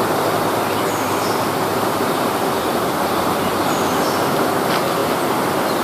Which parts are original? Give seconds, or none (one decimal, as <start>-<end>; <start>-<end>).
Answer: 0.0-1.7; 3.6-5.8

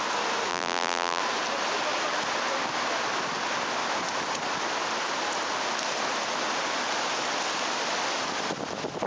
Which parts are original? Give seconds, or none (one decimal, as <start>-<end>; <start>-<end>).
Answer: 0.0-0.5; 1.2-9.1